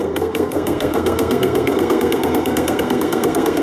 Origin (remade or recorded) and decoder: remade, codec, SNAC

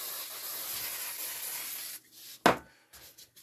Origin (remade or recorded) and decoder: recorded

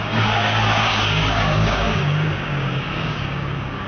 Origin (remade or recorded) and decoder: remade, codec, DAC